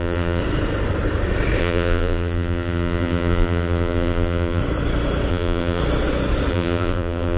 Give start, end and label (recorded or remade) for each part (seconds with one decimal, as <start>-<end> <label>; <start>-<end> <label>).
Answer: 0.0-0.4 remade; 0.4-1.6 recorded; 1.6-4.6 remade; 4.6-5.3 recorded; 5.3-5.8 remade; 5.8-6.5 recorded; 6.5-7.4 remade